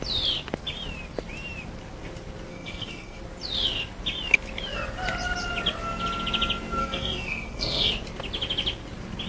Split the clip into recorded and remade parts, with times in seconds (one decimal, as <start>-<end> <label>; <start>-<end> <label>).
0.0-2.5 recorded; 2.5-3.2 remade; 3.2-6.8 recorded; 6.8-7.9 remade; 7.9-9.3 recorded